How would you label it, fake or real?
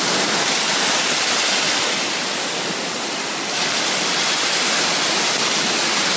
real